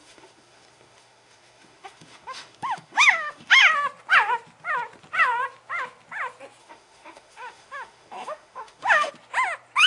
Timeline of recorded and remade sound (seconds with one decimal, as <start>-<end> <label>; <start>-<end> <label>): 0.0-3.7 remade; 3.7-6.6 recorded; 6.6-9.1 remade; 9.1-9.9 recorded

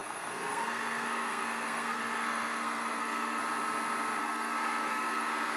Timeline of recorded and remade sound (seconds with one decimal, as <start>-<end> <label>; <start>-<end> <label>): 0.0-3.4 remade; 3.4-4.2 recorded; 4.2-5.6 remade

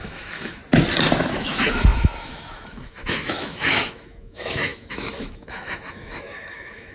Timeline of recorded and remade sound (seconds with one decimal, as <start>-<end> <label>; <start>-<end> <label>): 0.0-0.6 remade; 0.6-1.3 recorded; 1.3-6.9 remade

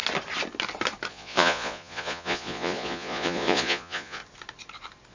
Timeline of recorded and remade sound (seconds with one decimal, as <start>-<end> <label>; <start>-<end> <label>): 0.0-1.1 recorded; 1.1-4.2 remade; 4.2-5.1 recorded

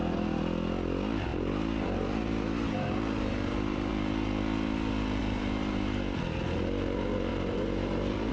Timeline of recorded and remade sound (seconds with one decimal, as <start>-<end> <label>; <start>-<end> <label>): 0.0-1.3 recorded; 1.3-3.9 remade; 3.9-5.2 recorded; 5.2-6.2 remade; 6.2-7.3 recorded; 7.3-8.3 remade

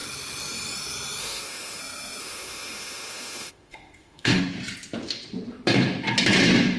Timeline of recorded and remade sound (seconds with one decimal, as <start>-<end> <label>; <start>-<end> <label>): 0.0-1.2 recorded; 1.2-1.8 remade; 1.8-2.2 recorded; 2.2-4.4 remade; 4.4-6.8 recorded